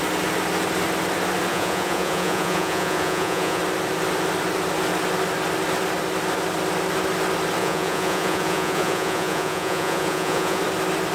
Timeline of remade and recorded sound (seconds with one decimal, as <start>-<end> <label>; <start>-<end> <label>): 0.0-1.5 recorded; 1.5-3.6 remade; 3.6-7.6 recorded; 7.6-10.6 remade; 10.6-11.1 recorded